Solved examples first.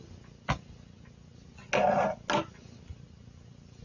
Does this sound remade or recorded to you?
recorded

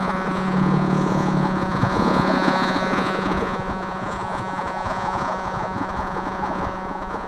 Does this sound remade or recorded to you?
remade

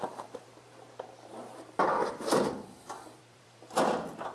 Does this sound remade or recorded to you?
remade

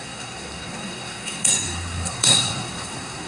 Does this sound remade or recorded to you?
remade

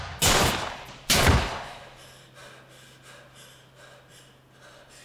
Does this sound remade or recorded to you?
recorded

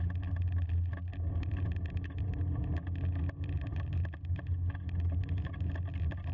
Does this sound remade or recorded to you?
recorded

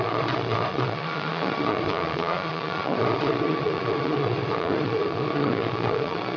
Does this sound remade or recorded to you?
remade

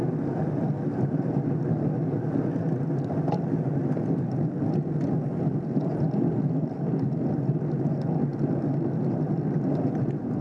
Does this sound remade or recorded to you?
recorded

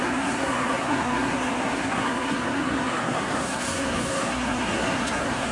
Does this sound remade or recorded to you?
remade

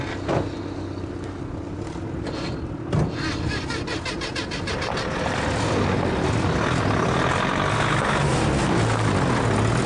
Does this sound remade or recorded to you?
recorded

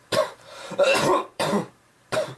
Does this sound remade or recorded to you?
remade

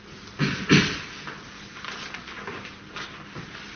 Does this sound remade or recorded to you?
recorded